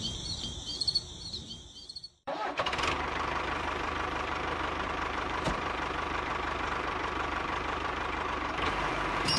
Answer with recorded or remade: remade